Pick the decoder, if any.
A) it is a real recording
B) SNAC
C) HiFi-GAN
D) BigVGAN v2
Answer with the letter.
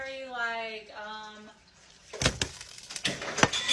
A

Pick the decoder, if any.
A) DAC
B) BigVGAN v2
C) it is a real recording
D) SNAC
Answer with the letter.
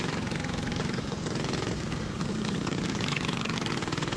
A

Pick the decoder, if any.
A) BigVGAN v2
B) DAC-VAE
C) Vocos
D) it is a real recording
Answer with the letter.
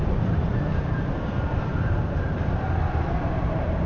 A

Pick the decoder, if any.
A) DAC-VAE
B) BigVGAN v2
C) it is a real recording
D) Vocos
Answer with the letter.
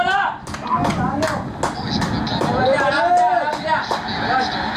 C